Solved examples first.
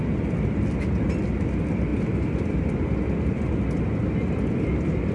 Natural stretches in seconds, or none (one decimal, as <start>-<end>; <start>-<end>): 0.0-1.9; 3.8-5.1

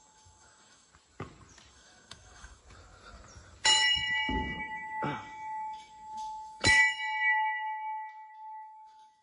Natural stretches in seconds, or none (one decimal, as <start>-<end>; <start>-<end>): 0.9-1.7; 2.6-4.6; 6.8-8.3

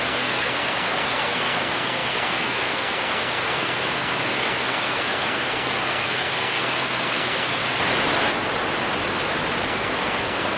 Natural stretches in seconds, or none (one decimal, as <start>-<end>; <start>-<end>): 7.6-9.6

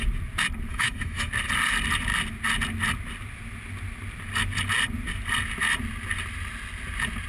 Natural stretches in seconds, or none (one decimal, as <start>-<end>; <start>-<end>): 0.0-0.7; 1.3-7.3

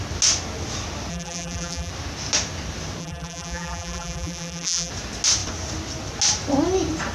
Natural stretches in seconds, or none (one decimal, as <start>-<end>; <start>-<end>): 0.0-1.1; 1.9-3.0; 4.9-7.1